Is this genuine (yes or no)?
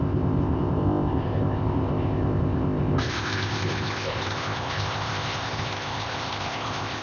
no